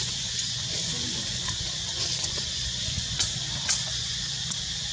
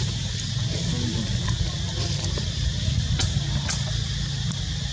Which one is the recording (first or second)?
second